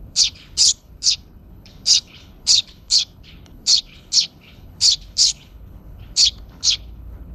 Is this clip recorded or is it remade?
remade